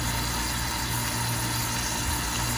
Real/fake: real